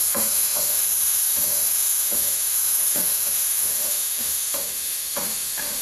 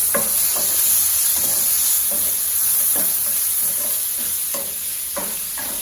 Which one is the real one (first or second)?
second